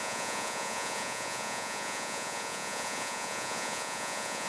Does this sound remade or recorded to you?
remade